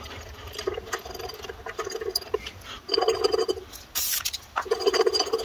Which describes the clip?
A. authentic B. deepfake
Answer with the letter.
A